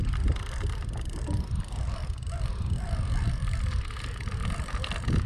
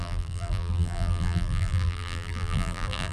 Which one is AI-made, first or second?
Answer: second